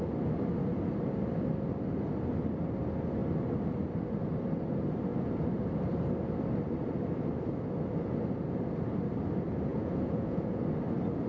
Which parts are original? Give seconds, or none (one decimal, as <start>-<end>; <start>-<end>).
0.0-9.7; 10.6-11.3